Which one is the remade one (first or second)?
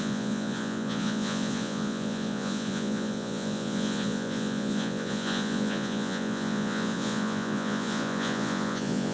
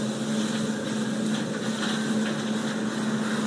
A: first